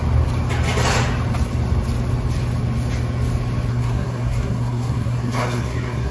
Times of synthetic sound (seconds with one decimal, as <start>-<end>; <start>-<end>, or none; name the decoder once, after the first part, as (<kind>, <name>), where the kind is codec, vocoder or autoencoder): 3.7-6.1 (codec, SNAC)